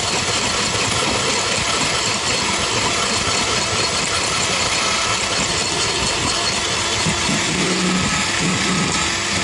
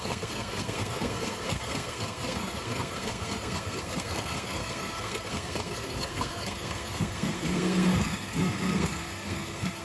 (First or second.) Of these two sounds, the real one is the first